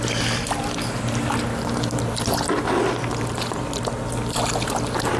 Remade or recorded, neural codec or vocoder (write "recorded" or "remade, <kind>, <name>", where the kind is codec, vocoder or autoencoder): recorded